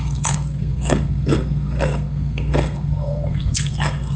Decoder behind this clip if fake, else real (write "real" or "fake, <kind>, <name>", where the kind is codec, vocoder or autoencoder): fake, codec, SNAC